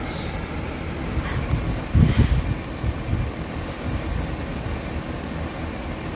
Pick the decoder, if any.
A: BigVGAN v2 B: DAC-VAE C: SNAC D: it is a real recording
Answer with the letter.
D